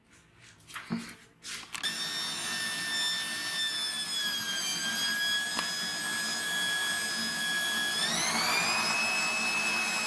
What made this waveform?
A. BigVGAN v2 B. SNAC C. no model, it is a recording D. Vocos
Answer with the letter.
C